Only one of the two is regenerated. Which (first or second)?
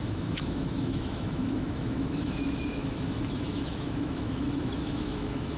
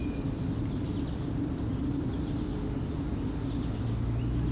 first